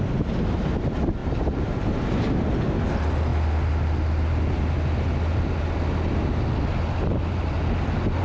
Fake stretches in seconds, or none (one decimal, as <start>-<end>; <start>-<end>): 1.2-2.3